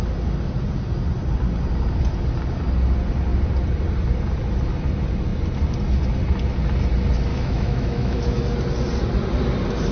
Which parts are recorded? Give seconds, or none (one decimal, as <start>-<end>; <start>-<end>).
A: 0.0-7.3; 8.4-9.9